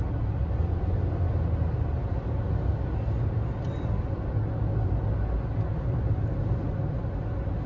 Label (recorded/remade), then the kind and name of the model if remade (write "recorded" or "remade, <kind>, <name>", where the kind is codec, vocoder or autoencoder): recorded